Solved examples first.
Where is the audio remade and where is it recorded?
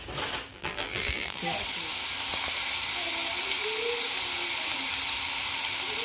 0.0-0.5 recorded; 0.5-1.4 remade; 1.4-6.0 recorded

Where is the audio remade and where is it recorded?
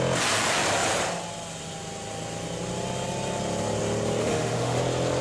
0.0-4.2 recorded; 4.2-4.8 remade; 4.8-5.2 recorded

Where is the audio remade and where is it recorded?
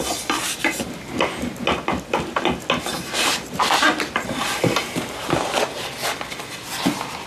0.0-2.9 recorded; 2.9-6.0 remade; 6.0-7.3 recorded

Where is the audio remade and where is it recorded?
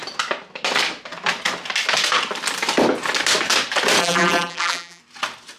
0.0-4.0 recorded; 4.0-5.0 remade; 5.0-5.6 recorded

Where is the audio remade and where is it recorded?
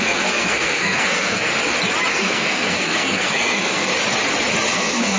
0.0-1.5 remade; 1.5-2.1 recorded; 2.1-3.9 remade; 3.9-4.7 recorded; 4.7-5.2 remade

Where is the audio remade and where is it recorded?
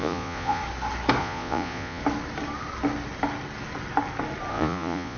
0.0-0.6 remade; 0.6-1.2 recorded; 1.2-2.0 remade; 2.0-4.5 recorded; 4.5-5.2 remade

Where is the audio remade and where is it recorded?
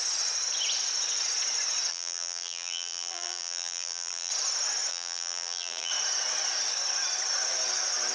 0.0-1.9 recorded; 1.9-4.3 remade; 4.3-4.9 recorded; 4.9-5.9 remade; 5.9-8.1 recorded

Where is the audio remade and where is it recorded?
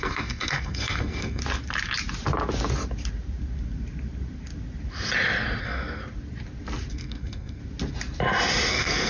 0.0-1.4 remade; 1.4-5.6 recorded; 5.6-6.0 remade; 6.0-6.9 recorded; 6.9-7.6 remade; 7.6-8.7 recorded; 8.7-9.1 remade